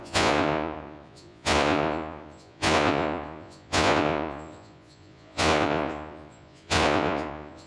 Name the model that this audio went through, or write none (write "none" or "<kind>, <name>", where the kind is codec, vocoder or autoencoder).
vocoder, Vocos